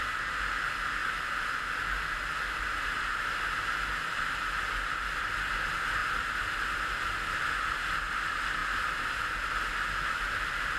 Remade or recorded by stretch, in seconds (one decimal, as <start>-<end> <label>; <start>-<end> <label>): 0.0-10.8 recorded